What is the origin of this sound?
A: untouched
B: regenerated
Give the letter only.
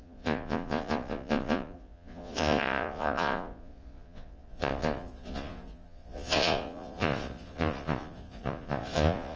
B